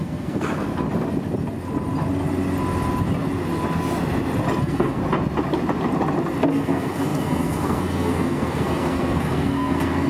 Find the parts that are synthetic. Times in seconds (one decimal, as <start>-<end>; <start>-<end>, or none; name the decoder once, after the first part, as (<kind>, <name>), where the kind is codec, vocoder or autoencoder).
0.0-0.7 (codec, SNAC); 4.6-5.0; 6.5-10.1

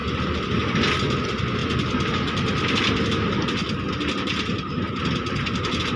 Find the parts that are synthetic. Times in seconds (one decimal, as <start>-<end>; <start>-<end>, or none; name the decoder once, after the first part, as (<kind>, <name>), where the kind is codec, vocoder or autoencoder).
none

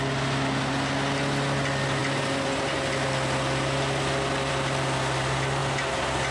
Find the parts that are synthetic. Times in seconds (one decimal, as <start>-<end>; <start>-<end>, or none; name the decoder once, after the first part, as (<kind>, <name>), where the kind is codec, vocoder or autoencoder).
none

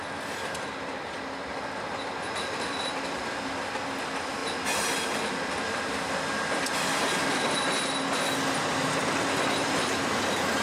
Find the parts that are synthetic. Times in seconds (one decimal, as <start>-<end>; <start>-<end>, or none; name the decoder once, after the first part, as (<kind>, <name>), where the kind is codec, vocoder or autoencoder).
none

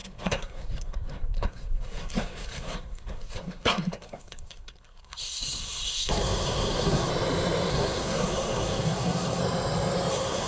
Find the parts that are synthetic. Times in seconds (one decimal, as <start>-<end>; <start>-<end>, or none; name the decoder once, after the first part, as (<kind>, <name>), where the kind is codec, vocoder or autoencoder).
0.0-7.1 (codec, SNAC); 7.7-9.4; 10.1-10.5

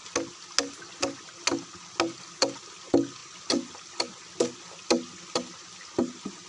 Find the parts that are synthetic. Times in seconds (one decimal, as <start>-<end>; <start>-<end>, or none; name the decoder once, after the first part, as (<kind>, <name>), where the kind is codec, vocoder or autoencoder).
none